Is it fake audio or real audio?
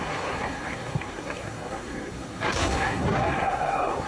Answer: fake